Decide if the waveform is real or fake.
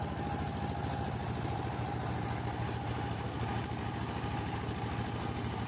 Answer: real